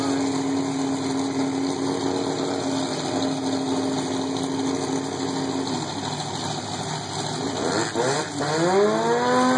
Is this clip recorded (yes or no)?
yes